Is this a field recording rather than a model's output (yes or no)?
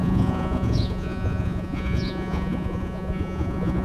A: no